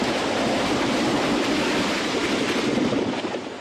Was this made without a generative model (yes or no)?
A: no